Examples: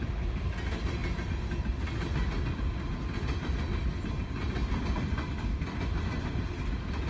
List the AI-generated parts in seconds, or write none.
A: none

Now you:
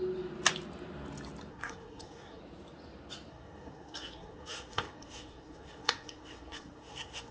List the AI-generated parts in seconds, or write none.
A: 1.5-2.4; 3.3-7.3